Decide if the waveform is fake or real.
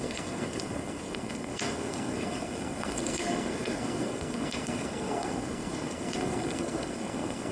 fake